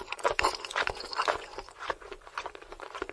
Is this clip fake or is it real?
fake